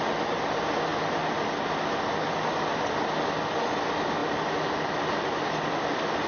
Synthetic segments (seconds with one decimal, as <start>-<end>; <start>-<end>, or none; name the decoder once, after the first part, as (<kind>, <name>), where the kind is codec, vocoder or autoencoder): none